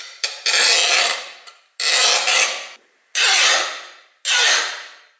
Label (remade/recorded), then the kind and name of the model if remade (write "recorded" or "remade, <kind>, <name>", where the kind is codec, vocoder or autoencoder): recorded